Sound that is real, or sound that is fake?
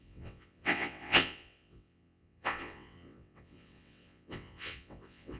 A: fake